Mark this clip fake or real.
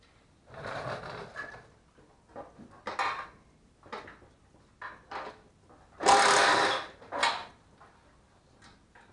real